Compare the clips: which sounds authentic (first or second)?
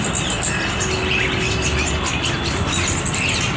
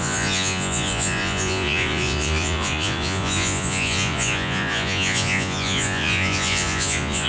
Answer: first